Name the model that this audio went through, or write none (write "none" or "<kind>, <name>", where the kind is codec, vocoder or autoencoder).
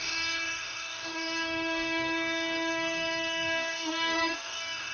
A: codec, DAC